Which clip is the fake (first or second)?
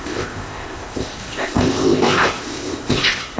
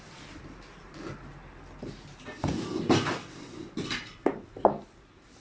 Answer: first